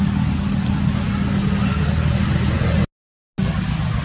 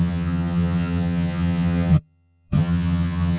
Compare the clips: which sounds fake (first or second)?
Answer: second